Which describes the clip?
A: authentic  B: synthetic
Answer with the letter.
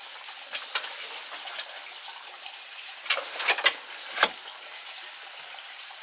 A